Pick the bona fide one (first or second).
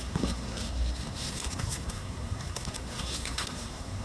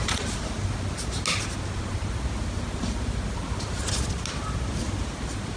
second